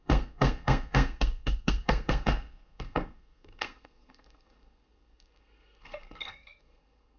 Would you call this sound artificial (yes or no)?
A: yes